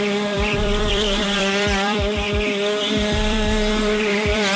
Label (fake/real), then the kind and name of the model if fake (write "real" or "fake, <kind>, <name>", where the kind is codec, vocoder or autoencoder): fake, vocoder, BigVGAN v2